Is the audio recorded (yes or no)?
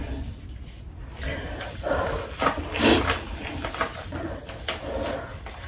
yes